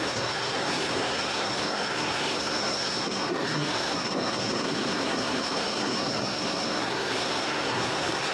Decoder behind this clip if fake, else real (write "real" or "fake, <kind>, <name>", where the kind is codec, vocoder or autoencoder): fake, codec, SNAC